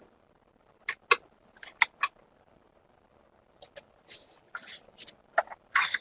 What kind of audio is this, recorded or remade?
recorded